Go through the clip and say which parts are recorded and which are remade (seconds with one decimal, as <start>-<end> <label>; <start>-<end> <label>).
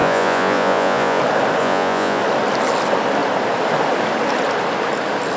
0.0-1.2 remade; 1.2-1.6 recorded; 1.6-2.2 remade; 2.2-5.4 recorded